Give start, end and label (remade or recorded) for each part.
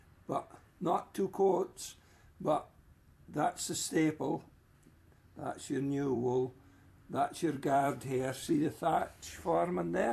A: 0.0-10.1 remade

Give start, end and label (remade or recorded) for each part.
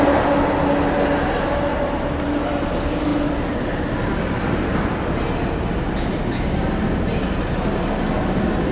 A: 0.0-1.7 recorded; 1.7-2.6 remade; 2.6-8.7 recorded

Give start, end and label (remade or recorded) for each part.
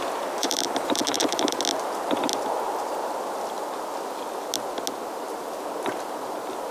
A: 0.0-0.4 recorded; 0.4-1.6 remade; 1.6-6.7 recorded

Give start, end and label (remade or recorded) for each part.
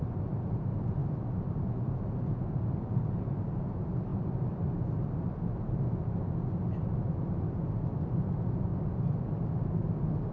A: 0.0-1.0 recorded; 1.0-1.9 remade; 1.9-10.3 recorded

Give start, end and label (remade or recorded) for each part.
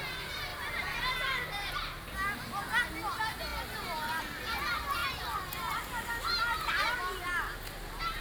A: 0.0-8.2 recorded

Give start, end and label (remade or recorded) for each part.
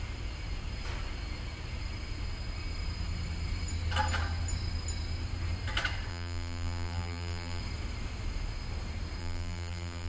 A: 0.0-6.1 recorded; 6.1-7.6 remade; 7.6-9.2 recorded; 9.2-10.1 remade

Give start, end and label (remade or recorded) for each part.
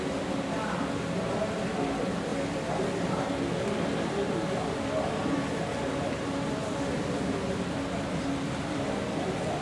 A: 0.0-9.6 recorded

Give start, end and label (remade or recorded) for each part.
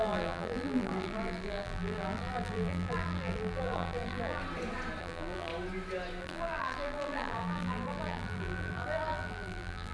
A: 0.0-4.4 remade; 4.4-5.0 recorded; 5.0-5.5 remade; 5.5-6.2 recorded; 6.2-9.9 remade